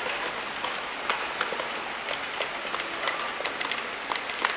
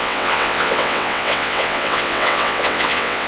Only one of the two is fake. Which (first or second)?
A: second